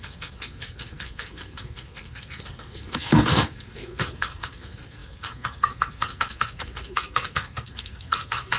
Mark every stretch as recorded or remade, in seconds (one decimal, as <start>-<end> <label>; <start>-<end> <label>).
0.0-8.6 remade